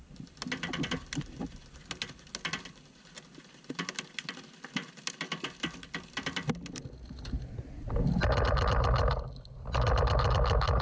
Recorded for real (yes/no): yes